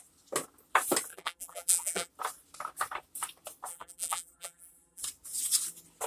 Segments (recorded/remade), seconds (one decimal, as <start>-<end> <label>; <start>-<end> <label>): 0.0-1.1 recorded; 1.1-2.1 remade; 2.1-3.7 recorded; 3.7-5.0 remade; 5.0-6.1 recorded

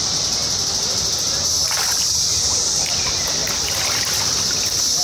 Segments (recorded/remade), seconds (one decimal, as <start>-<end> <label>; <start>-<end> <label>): 0.0-0.4 remade; 0.4-1.8 recorded; 1.8-3.4 remade; 3.4-4.4 recorded; 4.4-5.0 remade